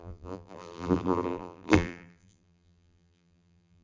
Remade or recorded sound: remade